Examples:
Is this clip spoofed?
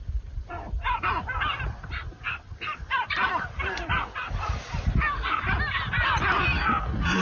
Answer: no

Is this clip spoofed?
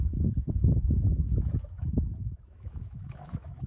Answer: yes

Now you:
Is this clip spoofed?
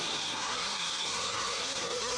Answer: yes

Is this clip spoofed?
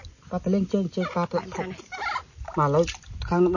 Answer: no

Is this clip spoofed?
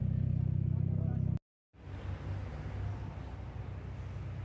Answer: no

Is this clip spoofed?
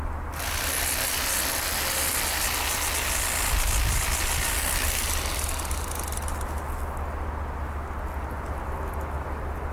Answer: no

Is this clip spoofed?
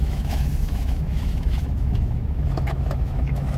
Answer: yes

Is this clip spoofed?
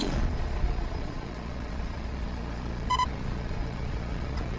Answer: yes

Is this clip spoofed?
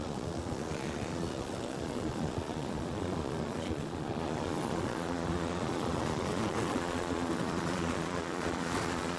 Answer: yes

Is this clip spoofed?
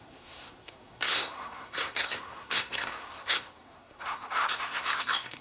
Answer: yes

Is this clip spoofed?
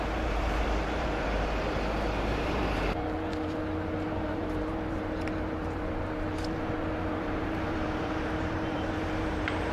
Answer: yes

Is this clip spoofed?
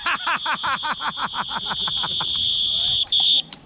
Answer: no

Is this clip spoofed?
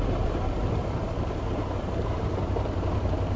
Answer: yes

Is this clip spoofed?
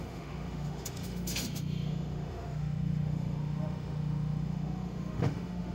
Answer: yes